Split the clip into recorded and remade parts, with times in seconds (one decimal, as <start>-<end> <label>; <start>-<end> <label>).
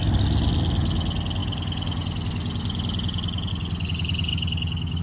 0.0-5.0 recorded